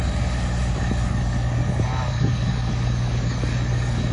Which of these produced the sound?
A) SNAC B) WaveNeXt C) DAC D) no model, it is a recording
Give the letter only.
C